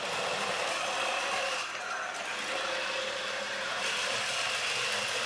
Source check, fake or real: real